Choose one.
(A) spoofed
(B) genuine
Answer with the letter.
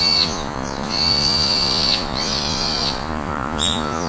A